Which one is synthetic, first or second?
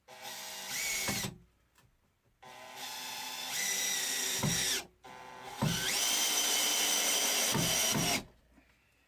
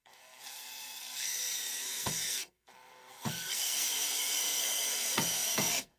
second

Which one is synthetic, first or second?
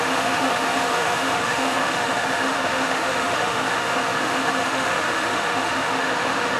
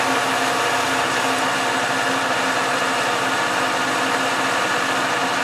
first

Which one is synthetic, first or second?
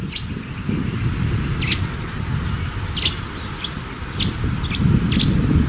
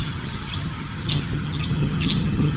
second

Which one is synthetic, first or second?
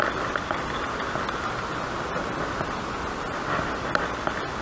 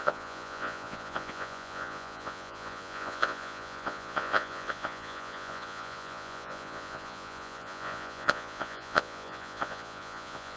second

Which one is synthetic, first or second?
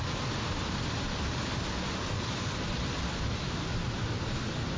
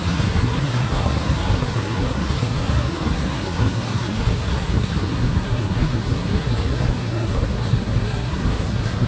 second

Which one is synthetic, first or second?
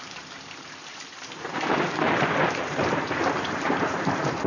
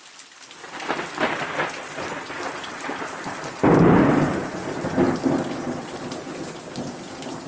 first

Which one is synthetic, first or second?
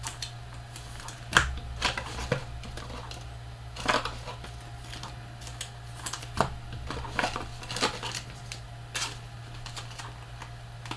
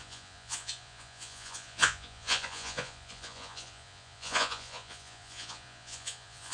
second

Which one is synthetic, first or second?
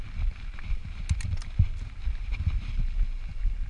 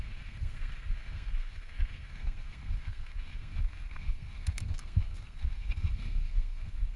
second